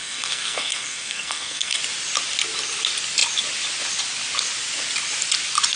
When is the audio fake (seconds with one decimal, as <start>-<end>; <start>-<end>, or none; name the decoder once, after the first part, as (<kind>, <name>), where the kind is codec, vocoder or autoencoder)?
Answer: 0.0-1.8 (codec, SNAC)